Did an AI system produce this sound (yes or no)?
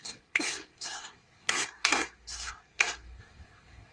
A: yes